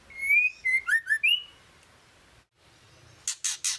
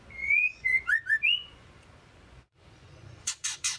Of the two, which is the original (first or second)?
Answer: first